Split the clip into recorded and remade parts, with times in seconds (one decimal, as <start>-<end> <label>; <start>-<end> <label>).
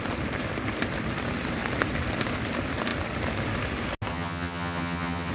0.0-4.1 recorded; 4.1-5.3 remade